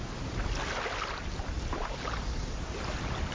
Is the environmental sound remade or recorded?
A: recorded